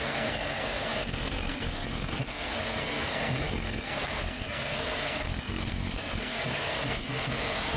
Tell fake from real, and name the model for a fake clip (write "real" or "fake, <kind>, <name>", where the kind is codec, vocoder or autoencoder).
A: fake, codec, SNAC